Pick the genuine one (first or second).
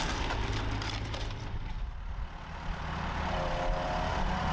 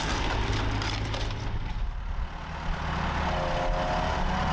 second